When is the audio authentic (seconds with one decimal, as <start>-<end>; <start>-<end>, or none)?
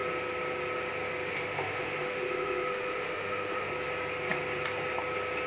0.0-1.3; 3.7-5.5